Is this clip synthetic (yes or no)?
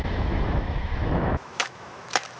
yes